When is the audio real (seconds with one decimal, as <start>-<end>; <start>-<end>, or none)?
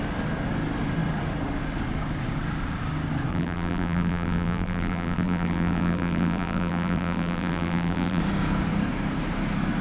0.0-3.3; 8.2-9.8